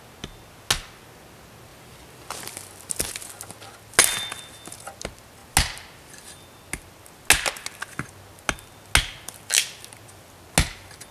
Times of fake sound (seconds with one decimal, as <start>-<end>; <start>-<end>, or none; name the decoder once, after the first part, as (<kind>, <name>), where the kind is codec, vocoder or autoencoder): none